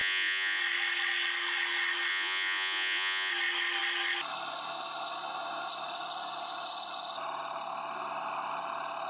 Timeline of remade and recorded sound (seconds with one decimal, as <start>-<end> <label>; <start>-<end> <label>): 0.0-0.6 remade; 0.6-2.1 recorded; 2.1-3.3 remade; 3.3-9.1 recorded